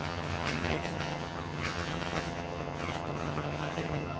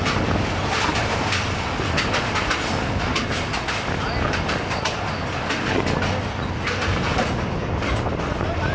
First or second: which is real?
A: second